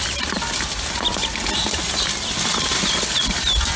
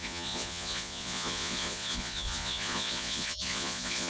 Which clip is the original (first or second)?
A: first